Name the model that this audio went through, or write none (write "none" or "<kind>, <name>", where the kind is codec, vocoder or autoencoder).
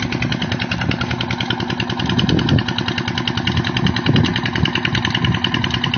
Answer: none